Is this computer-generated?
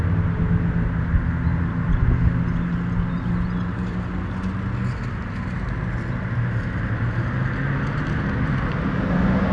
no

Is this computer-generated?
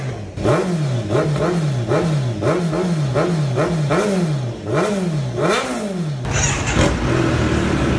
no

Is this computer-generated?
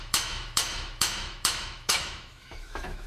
yes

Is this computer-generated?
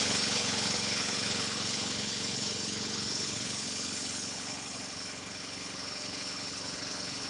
yes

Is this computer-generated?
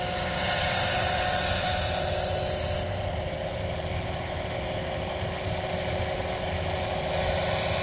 no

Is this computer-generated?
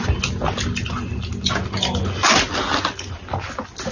no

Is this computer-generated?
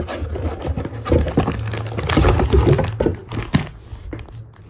no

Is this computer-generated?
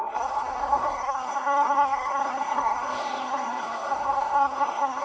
yes